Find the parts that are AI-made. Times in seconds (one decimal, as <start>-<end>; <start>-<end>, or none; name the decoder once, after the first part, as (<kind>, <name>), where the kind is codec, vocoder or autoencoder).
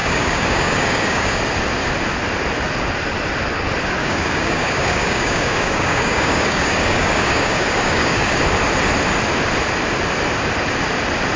0.0-1.4 (codec, DAC); 4.0-8.4